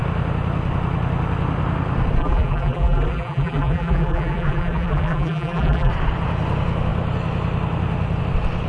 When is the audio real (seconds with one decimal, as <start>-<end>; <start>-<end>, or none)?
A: 0.0-2.2; 5.9-8.7